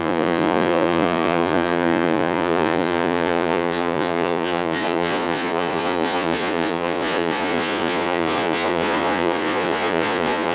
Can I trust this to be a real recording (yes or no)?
no